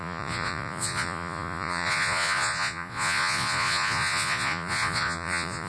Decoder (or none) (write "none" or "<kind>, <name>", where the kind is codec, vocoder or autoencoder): vocoder, Vocos